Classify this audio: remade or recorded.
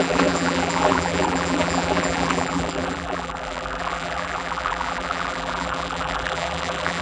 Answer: remade